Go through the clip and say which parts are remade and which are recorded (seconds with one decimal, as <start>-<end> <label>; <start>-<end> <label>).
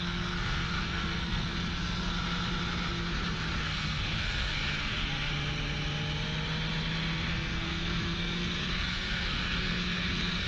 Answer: 0.0-2.1 remade; 2.1-3.6 recorded; 3.6-5.3 remade; 5.3-7.3 recorded; 7.3-10.5 remade